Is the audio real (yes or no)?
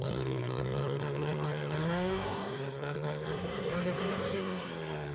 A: no